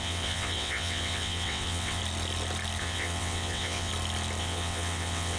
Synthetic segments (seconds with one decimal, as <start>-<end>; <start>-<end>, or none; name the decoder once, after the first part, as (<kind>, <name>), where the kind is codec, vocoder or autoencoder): 0.0-2.0 (vocoder, WaveNeXt); 2.8-3.9; 4.4-5.4